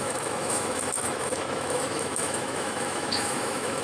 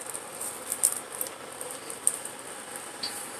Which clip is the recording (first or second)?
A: second